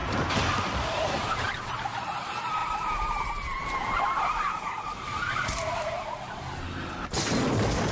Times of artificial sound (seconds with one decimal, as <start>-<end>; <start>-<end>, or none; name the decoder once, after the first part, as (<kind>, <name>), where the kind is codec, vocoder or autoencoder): 0.0-1.5 (vocoder, BigVGAN v2); 2.6-6.4